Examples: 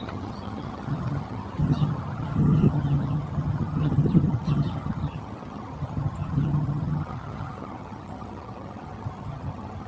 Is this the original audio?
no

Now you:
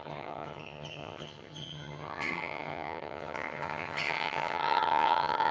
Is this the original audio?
no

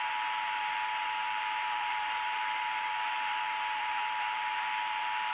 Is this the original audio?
no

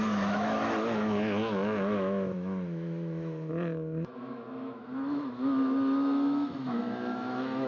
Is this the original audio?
no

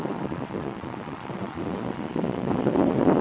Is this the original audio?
no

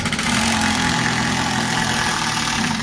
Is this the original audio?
yes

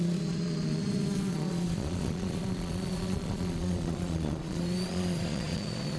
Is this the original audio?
no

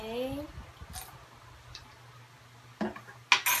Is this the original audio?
yes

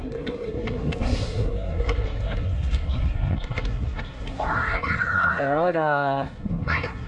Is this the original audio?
no